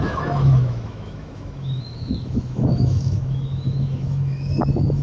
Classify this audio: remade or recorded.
remade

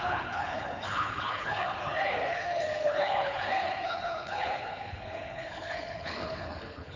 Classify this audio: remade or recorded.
remade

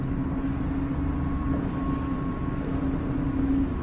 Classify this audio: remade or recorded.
recorded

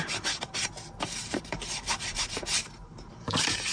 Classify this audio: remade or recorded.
remade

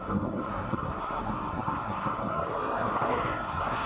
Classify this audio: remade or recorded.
remade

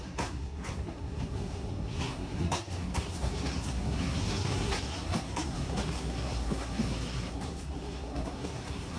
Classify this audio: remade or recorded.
remade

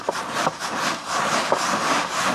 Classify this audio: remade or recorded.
recorded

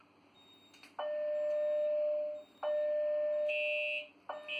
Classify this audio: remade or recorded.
recorded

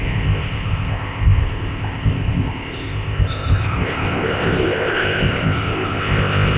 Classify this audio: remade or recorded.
remade